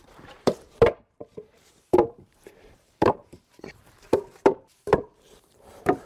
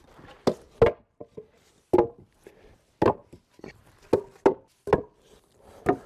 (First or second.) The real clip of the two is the second